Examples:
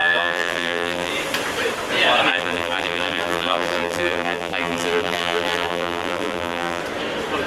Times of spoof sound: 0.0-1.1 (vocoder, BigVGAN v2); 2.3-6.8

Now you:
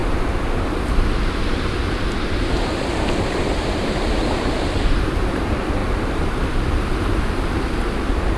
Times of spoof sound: 0.0-1.7 (vocoder, BigVGAN v2); 2.6-8.4

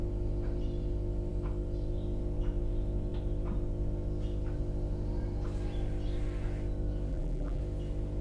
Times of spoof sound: 7.1-7.6 (vocoder, BigVGAN v2)

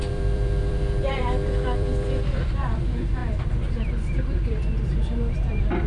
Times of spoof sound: 0.0-5.9 (vocoder, BigVGAN v2)

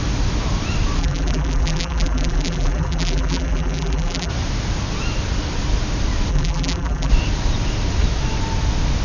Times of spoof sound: 1.0-4.3 (vocoder, BigVGAN v2); 6.3-7.1